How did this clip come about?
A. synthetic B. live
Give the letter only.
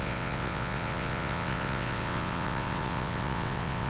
A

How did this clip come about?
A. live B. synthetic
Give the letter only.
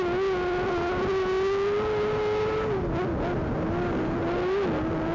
A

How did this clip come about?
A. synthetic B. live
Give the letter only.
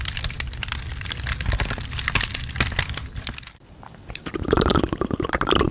B